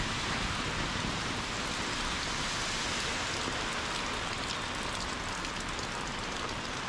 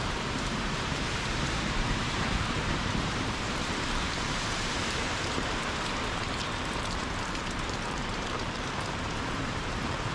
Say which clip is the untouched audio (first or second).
first